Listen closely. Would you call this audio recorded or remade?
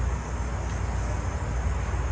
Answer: recorded